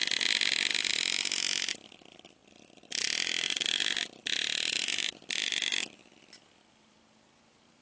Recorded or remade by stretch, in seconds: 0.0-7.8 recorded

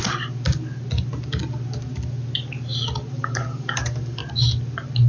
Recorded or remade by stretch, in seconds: 0.0-3.1 recorded; 3.1-4.2 remade; 4.2-5.1 recorded

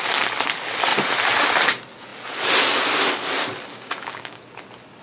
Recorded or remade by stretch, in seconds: 0.0-3.7 recorded; 3.7-4.4 remade; 4.4-5.0 recorded